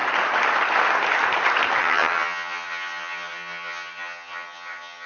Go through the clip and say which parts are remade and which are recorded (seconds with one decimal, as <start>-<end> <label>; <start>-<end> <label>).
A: 0.0-1.8 recorded; 1.8-5.1 remade